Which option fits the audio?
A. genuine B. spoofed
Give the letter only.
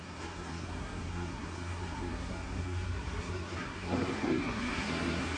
B